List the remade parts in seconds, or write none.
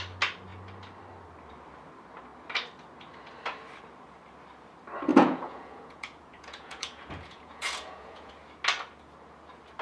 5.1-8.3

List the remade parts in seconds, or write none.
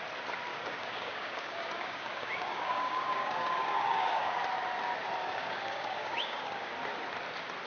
0.5-4.4; 5.2-6.7